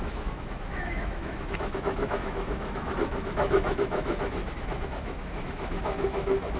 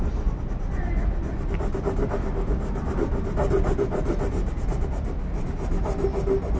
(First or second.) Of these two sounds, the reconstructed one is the first